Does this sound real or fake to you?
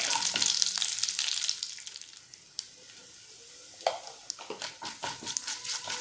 real